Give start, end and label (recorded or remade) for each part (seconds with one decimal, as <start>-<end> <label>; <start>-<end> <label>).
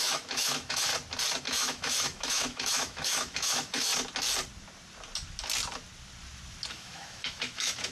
0.0-0.9 remade; 0.9-1.4 recorded; 1.4-3.9 remade; 3.9-6.7 recorded; 6.7-7.9 remade